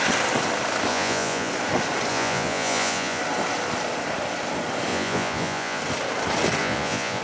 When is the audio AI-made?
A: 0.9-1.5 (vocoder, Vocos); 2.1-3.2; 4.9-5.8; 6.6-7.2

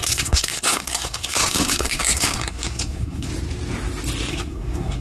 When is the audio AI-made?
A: 0.0-3.3 (codec, SNAC); 4.3-5.0